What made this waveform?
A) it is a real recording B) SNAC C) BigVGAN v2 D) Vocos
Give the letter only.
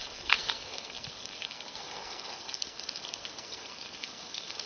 B